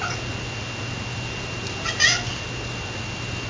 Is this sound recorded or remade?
recorded